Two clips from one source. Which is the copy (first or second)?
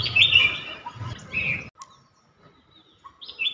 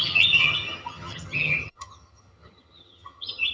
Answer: second